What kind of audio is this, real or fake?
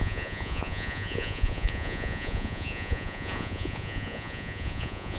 fake